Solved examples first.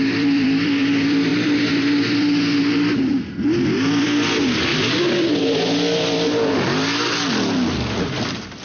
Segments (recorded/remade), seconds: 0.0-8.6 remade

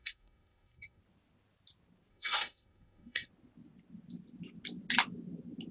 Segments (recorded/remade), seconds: 0.0-1.0 remade; 1.0-2.1 recorded; 2.1-3.3 remade; 3.3-5.7 recorded

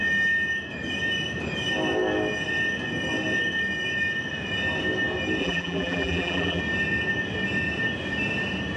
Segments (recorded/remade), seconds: 0.0-5.4 recorded; 5.4-6.6 remade; 6.6-8.8 recorded

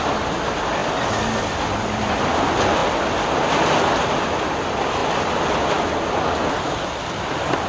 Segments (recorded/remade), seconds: 0.0-7.7 recorded